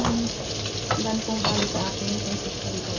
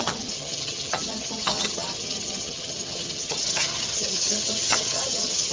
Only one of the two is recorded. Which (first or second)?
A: first